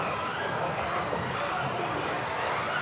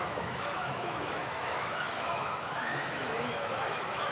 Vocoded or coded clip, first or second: second